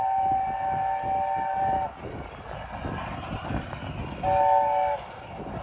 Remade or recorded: recorded